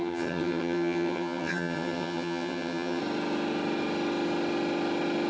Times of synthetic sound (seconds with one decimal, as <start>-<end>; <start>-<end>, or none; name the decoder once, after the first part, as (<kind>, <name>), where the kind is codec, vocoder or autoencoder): 0.0-3.0 (vocoder, HiFi-GAN)